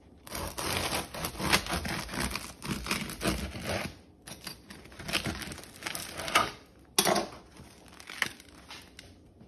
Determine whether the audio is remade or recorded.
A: recorded